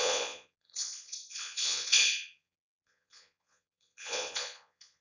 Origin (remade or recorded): remade